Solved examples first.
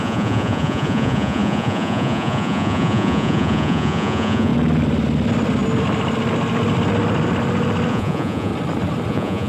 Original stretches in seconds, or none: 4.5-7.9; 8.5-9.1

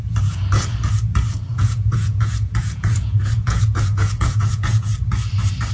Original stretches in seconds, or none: 0.0-1.5; 4.9-5.7

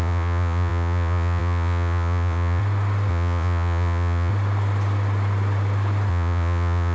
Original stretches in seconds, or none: 2.6-3.1; 4.3-6.1

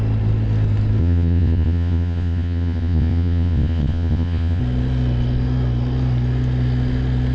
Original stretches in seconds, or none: 0.0-1.0; 4.6-7.3